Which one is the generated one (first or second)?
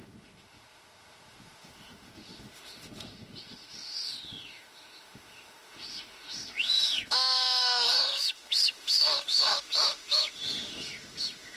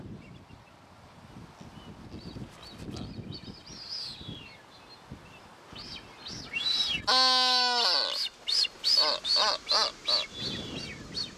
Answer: first